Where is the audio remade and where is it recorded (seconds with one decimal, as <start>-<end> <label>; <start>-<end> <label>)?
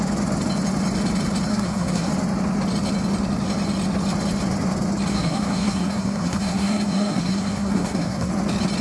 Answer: 0.0-1.5 recorded; 1.5-2.1 remade; 2.1-5.1 recorded; 5.1-8.3 remade; 8.3-8.8 recorded